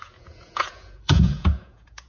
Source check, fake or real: fake